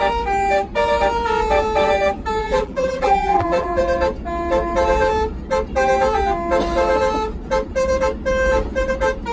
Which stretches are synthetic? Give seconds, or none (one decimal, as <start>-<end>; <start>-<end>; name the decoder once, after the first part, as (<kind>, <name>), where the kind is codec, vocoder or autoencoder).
2.4-3.8 (vocoder, BigVGAN v2)